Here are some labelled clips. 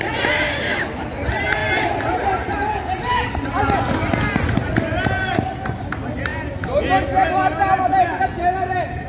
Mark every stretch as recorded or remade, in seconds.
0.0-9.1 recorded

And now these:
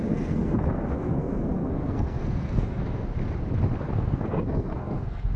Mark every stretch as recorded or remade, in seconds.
0.0-3.1 remade; 3.1-3.8 recorded; 3.8-5.4 remade

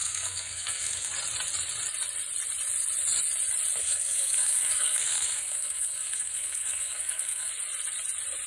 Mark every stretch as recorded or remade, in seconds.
0.0-1.1 remade; 1.1-3.8 recorded; 3.8-7.5 remade; 7.5-8.5 recorded

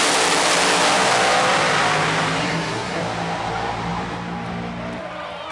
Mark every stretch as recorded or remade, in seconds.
0.0-2.4 recorded; 2.4-3.0 remade; 3.0-5.5 recorded

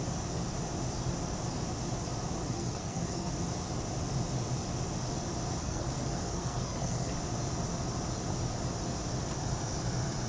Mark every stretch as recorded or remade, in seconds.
0.0-2.4 recorded; 2.4-3.3 remade; 3.3-5.6 recorded; 5.6-7.1 remade; 7.1-10.3 recorded